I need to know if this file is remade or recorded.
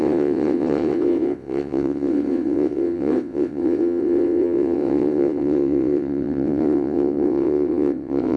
remade